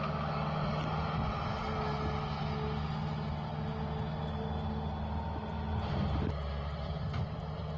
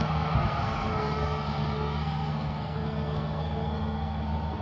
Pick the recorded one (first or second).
first